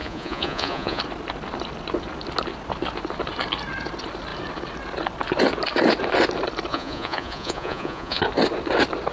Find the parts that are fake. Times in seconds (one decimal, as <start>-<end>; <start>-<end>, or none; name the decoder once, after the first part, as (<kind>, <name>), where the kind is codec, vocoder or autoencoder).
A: 0.0-1.0 (vocoder, Vocos); 6.7-8.2

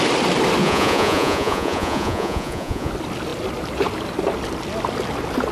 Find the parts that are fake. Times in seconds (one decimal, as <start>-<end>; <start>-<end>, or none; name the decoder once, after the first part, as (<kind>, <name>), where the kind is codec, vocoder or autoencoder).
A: 0.6-2.9 (vocoder, Vocos)

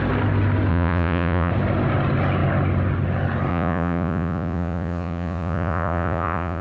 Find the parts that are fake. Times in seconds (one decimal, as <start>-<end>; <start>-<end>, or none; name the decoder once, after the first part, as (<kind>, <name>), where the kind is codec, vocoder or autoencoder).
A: 0.7-1.5 (vocoder, Vocos); 3.5-6.6

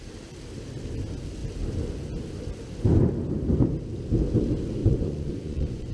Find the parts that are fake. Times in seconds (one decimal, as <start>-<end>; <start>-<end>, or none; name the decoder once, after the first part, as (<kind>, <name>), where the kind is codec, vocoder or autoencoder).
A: 4.8-5.9 (vocoder, Vocos)

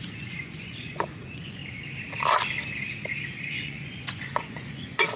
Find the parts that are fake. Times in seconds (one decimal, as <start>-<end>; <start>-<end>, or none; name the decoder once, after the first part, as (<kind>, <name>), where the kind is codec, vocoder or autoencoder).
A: 0.0-1.6 (vocoder, Vocos); 3.5-5.2

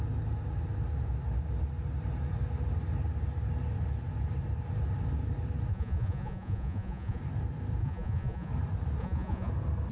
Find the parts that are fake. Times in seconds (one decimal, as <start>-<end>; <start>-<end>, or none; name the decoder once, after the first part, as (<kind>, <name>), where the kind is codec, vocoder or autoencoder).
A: 5.7-7.2 (vocoder, Vocos); 7.8-8.5; 9.0-9.5

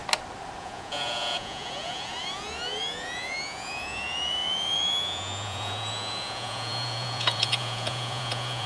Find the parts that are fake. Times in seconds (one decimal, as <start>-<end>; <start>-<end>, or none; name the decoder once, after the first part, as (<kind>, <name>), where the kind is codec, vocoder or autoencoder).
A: 0.6-8.7 (vocoder, Vocos)

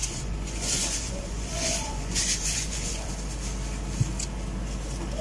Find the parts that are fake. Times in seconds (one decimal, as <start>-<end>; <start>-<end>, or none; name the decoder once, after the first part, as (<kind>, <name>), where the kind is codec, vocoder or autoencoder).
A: 0.0-3.1 (vocoder, Vocos)